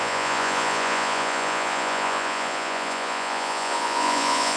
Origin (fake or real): fake